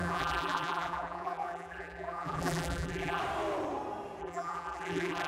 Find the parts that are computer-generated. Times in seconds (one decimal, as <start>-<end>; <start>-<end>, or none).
0.0-3.2; 4.2-5.3